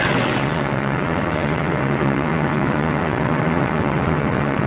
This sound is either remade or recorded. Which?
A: remade